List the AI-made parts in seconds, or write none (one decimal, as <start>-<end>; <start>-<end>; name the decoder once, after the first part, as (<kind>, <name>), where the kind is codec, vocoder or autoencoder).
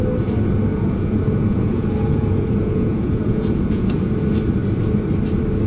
0.7-4.1 (vocoder, Vocos)